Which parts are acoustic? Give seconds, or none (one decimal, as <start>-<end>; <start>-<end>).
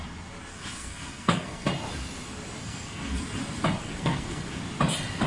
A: 0.0-0.5; 1.7-2.6; 3.2-3.8; 4.6-5.3